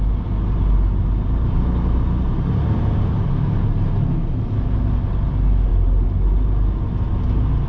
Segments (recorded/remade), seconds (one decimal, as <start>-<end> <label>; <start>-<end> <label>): 0.0-7.7 recorded